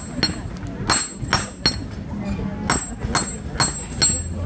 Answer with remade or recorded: recorded